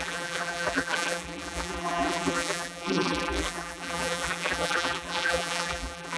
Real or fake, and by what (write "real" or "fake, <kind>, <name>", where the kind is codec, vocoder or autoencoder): fake, vocoder, BigVGAN v2